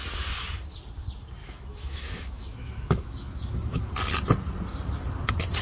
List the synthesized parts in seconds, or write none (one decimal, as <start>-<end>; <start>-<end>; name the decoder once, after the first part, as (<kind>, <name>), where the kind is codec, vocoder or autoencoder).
1.4-3.9 (autoencoder, DAC-VAE)